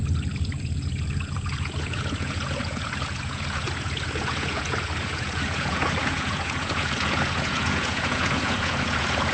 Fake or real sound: fake